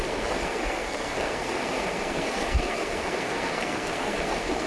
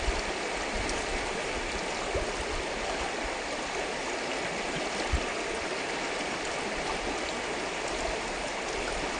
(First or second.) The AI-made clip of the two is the first